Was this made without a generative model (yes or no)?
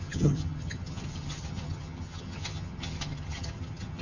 no